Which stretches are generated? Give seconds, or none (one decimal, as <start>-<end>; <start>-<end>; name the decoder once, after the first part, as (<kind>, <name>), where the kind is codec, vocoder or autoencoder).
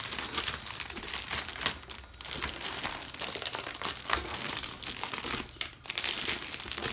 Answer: 4.0-4.5 (codec, SNAC)